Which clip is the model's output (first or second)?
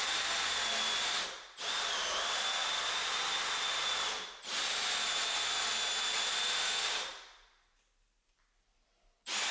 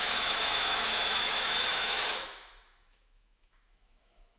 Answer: second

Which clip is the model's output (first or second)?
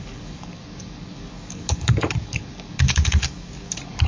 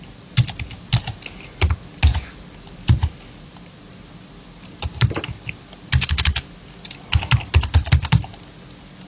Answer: first